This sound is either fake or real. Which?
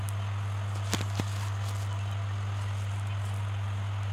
real